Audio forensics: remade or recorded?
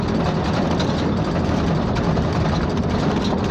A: recorded